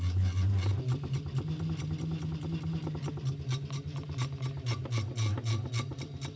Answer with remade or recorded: recorded